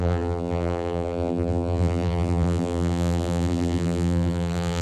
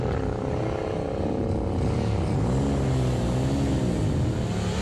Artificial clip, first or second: first